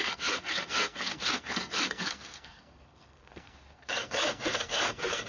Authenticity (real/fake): fake